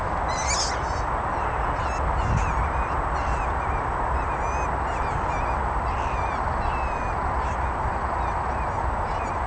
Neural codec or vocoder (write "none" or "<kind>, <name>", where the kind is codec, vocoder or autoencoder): none